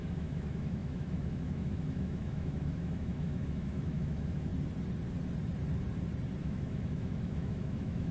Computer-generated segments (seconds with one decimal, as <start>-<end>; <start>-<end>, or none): 0.0-4.5; 6.4-8.1